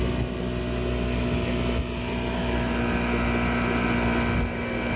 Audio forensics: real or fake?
real